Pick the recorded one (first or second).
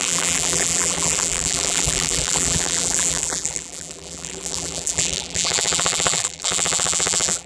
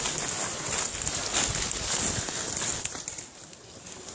second